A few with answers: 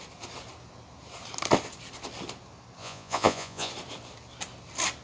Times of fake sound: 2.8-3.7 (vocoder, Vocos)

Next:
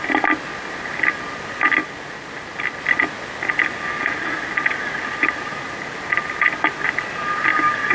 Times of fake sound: none